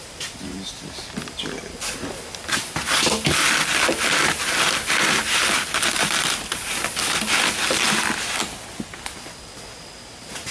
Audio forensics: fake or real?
real